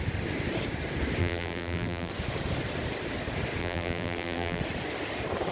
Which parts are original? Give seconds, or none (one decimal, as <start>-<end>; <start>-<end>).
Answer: 0.0-1.2; 2.1-3.6; 4.6-5.5